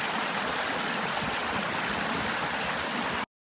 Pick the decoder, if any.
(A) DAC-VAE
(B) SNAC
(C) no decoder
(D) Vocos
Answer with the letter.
C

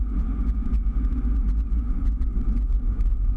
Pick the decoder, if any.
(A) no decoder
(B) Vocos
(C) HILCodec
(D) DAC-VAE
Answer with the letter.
B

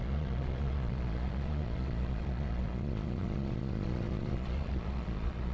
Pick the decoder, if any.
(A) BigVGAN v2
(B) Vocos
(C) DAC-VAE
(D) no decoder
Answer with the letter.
B